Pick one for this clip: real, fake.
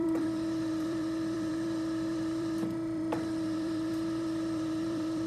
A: fake